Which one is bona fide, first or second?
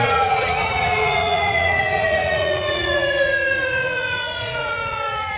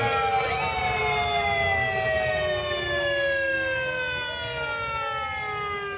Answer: second